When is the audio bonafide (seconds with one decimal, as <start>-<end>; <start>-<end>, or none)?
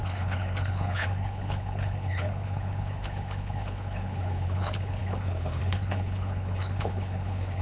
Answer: none